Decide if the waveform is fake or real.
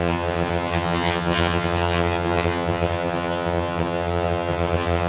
fake